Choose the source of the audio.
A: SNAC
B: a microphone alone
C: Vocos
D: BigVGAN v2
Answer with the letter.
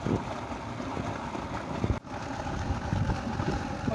B